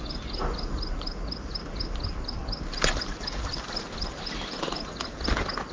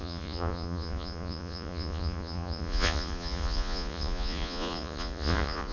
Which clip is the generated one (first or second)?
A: second